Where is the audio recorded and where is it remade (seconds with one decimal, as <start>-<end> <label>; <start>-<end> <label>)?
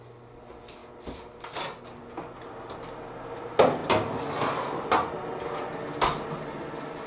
0.0-7.1 recorded